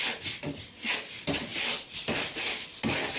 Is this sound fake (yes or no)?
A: no